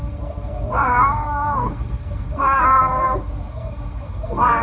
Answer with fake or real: fake